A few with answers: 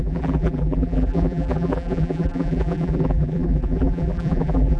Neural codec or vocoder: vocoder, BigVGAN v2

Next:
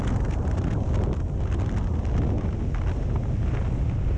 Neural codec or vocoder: none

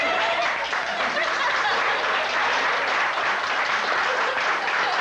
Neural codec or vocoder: none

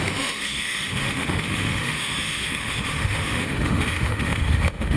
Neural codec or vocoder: autoencoder, DAC-VAE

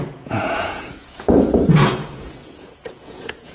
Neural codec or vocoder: vocoder, Vocos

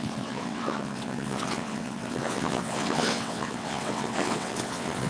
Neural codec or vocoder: vocoder, WaveNeXt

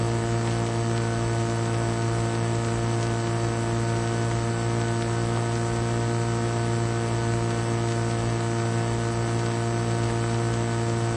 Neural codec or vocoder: none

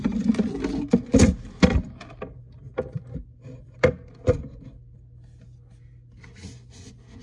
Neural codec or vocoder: none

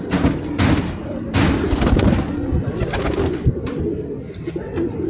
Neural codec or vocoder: none